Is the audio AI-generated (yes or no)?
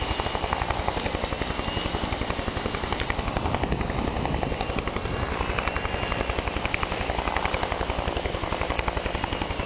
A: no